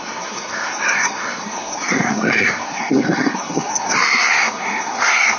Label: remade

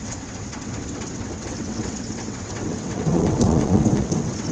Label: remade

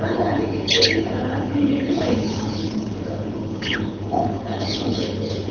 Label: remade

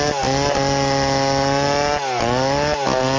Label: recorded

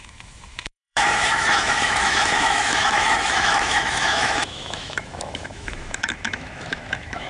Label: remade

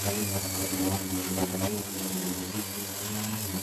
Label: recorded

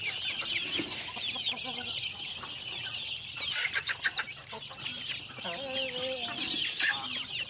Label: recorded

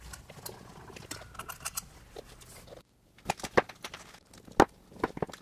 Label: recorded